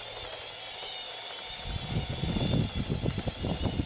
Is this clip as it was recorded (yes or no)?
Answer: yes